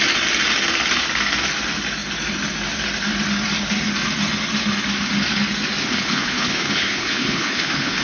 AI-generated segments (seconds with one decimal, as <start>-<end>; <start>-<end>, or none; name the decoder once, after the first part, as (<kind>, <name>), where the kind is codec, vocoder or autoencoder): 5.8-8.0 (codec, HILCodec)